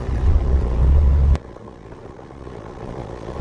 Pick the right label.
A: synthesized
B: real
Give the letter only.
A